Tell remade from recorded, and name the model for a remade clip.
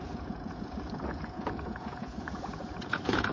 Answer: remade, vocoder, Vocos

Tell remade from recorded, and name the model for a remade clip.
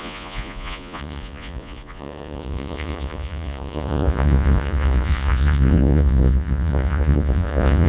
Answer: remade, vocoder, Vocos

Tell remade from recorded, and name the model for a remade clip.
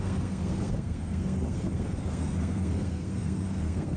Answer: remade, codec, SNAC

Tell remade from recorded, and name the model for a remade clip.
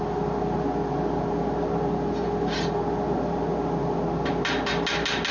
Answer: recorded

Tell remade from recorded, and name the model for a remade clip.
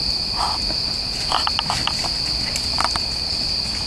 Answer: recorded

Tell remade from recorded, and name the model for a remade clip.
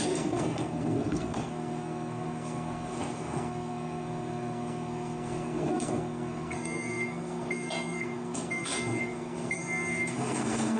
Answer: remade, codec, SNAC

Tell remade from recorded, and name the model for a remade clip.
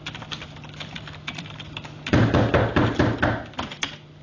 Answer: recorded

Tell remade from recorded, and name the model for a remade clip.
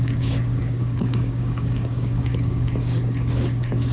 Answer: remade, codec, DAC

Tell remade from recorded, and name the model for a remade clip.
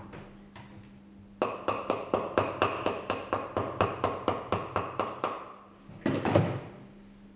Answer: recorded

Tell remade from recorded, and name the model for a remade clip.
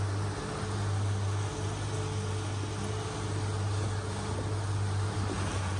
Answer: recorded